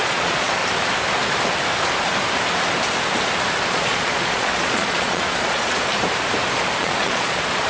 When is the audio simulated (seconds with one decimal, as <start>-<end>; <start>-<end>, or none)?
0.0-0.6; 3.7-5.9; 6.8-7.7